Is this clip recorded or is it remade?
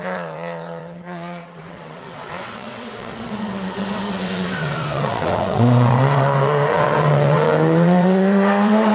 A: remade